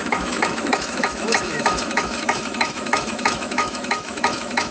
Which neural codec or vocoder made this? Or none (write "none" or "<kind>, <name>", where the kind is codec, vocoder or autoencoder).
autoencoder, DAC-VAE